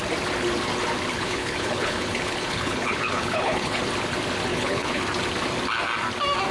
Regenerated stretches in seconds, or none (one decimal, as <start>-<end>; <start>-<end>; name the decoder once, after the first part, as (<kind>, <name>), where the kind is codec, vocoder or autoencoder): 1.1-3.8 (codec, HILCodec); 4.5-5.0